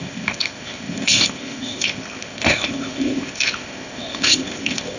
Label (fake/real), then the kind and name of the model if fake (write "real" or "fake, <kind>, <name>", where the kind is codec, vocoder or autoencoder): fake, codec, ZipCodec